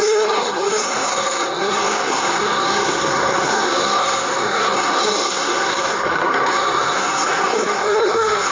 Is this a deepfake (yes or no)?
yes